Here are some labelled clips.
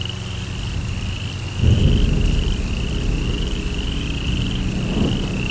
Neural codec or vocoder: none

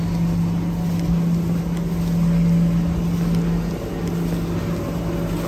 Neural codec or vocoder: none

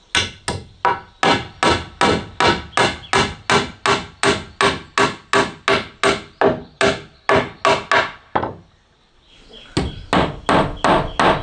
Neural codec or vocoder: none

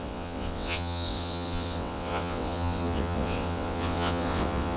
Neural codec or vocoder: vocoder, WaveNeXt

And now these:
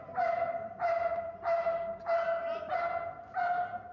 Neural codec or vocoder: none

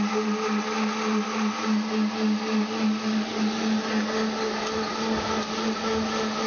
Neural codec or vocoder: none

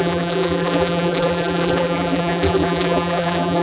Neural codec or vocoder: vocoder, BigVGAN v2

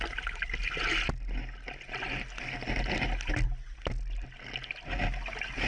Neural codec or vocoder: none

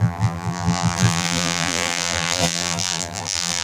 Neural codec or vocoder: vocoder, BigVGAN v2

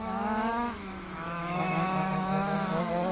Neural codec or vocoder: autoencoder, DAC-VAE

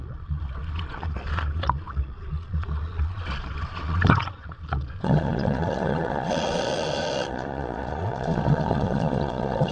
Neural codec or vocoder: vocoder, Vocos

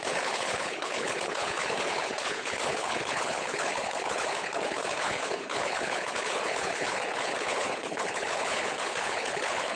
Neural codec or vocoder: codec, HILCodec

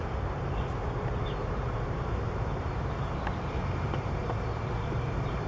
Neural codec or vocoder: vocoder, BigVGAN v2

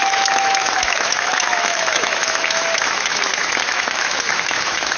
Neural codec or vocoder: autoencoder, DAC-VAE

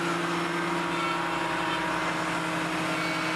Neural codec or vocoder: none